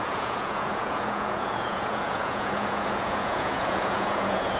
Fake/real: fake